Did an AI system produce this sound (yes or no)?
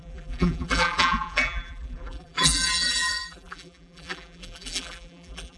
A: yes